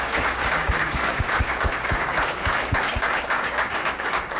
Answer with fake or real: fake